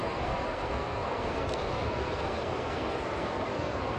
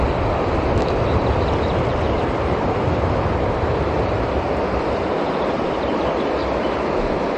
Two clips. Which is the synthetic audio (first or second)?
first